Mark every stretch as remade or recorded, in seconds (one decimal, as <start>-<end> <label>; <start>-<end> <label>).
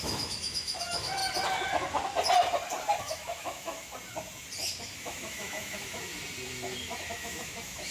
0.0-1.2 remade; 1.2-3.0 recorded; 3.0-3.9 remade; 3.9-4.8 recorded; 4.8-6.1 remade; 6.1-6.8 recorded; 6.8-7.9 remade